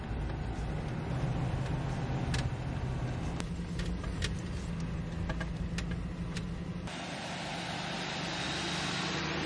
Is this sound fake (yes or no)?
no